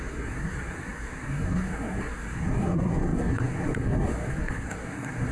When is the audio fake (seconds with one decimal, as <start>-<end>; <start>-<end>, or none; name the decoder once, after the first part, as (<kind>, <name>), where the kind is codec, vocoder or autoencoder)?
0.0-5.3 (codec, SNAC)